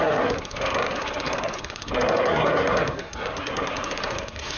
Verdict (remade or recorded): remade